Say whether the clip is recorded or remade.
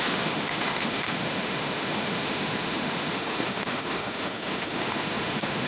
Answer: remade